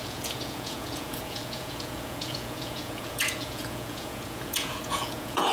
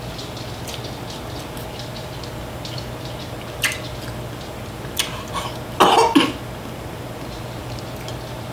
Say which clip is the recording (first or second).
second